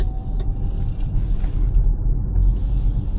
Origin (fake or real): real